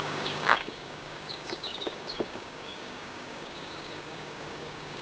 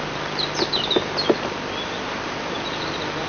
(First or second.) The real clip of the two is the second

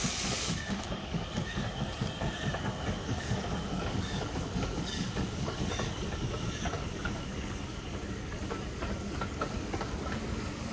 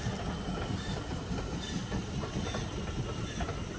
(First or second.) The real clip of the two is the second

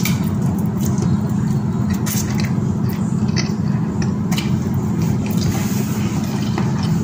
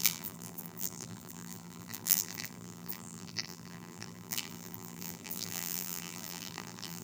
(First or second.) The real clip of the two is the first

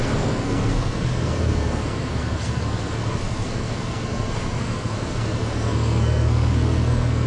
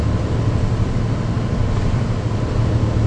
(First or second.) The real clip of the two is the second